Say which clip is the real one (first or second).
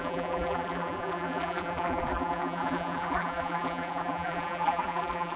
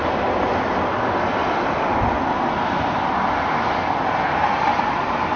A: second